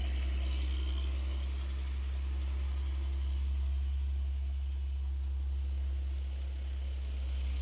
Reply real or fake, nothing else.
real